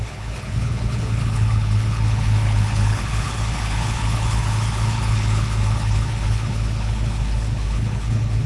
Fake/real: fake